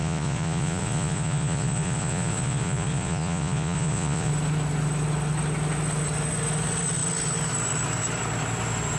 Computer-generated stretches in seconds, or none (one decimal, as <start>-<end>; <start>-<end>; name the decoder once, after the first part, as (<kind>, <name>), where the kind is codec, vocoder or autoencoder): 0.0-4.3 (vocoder, Vocos)